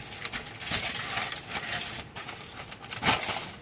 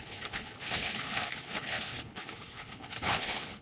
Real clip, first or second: first